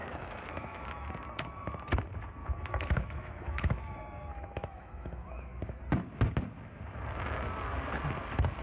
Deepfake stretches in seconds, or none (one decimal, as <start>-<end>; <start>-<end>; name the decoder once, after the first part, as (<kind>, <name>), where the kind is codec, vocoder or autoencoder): 0.0-1.1 (autoencoder, DAC-VAE); 2.4-5.8